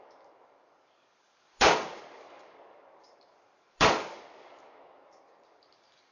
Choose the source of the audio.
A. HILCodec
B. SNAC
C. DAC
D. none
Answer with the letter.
C